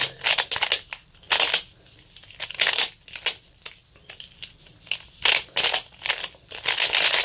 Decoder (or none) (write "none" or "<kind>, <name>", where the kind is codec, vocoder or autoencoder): none